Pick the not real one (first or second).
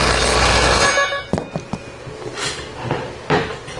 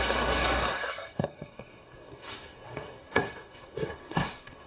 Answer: second